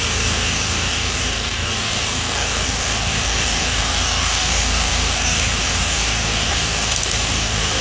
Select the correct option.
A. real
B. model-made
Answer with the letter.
B